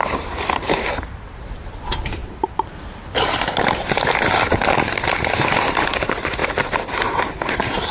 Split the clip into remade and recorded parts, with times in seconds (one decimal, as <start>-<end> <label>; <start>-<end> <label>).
0.0-7.9 recorded